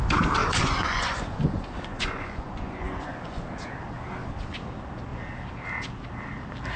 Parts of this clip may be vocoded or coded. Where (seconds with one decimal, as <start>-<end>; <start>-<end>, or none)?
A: 0.4-3.4